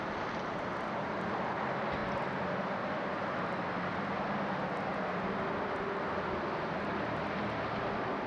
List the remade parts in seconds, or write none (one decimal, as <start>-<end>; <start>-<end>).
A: none